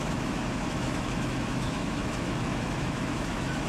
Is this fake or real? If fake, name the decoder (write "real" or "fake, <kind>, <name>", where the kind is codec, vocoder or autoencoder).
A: fake, autoencoder, DAC-VAE